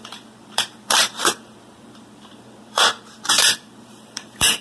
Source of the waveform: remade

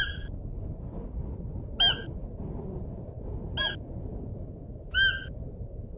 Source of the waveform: recorded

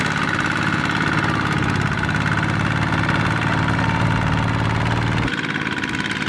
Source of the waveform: recorded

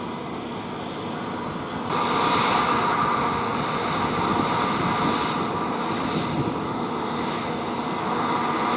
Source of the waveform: recorded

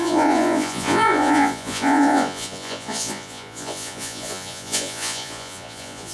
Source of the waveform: remade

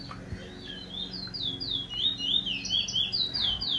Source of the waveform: recorded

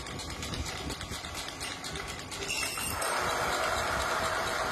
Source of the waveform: recorded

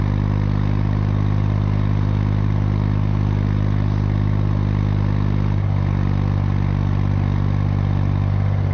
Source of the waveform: recorded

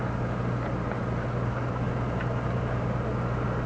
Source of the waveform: recorded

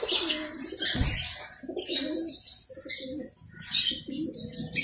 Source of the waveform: recorded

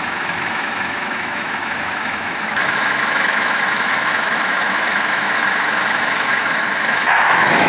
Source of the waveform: remade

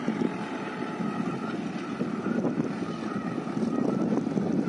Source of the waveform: recorded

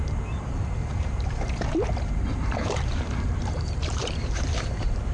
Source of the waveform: remade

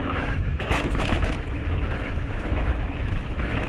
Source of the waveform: remade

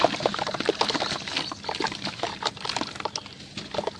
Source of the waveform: recorded